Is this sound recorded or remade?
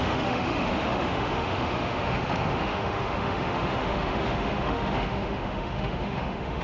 remade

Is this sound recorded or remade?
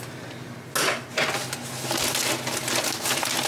recorded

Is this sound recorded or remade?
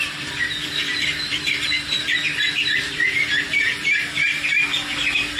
remade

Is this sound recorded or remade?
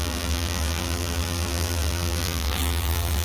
remade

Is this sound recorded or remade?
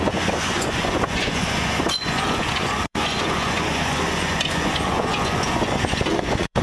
remade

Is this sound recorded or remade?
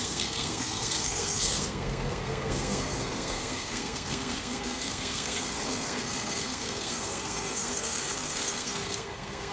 remade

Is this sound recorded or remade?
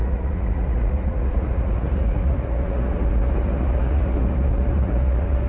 remade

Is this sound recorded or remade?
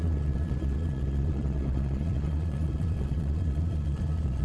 remade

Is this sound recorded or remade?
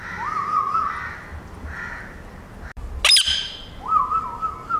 recorded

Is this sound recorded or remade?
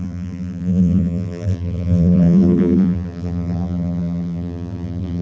remade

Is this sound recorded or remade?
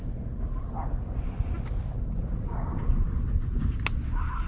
recorded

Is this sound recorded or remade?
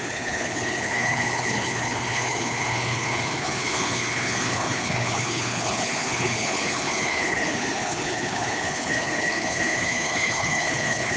remade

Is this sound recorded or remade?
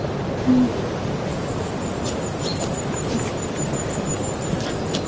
recorded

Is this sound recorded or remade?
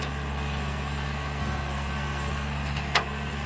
remade